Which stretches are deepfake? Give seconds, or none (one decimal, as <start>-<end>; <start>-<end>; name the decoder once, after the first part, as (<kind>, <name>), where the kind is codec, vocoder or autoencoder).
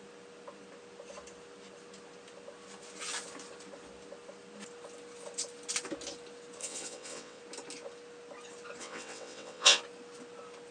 6.6-7.4 (vocoder, WaveNeXt); 8.8-9.8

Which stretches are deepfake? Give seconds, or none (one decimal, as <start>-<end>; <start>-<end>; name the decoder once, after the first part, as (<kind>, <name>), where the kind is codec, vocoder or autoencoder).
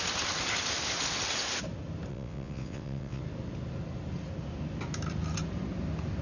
2.1-3.2 (vocoder, WaveNeXt)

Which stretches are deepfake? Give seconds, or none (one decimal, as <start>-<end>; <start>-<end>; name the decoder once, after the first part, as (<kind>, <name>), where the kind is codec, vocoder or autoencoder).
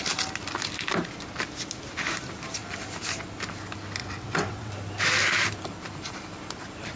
4.0-4.7 (vocoder, WaveNeXt)